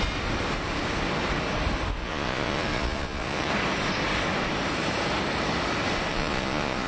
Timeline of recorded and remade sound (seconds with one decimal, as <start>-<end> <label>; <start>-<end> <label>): 0.0-2.0 recorded; 2.0-3.5 remade; 3.5-6.1 recorded; 6.1-6.9 remade